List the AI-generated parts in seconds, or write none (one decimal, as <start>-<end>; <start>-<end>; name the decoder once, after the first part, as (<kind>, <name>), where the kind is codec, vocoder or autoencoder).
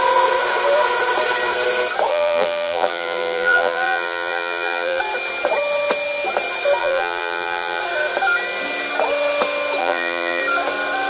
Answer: 2.1-5.0 (vocoder, BigVGAN v2); 6.8-7.8; 9.8-10.4